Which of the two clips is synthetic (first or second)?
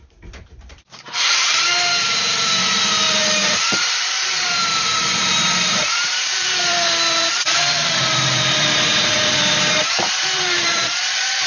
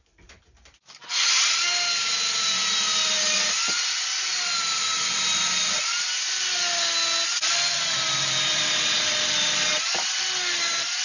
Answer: first